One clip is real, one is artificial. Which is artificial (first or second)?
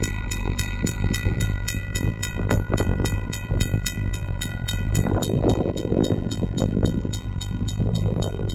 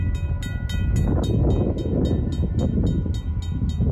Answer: first